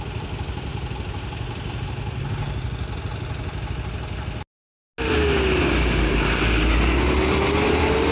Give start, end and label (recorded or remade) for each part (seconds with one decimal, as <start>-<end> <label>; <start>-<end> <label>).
0.0-8.1 recorded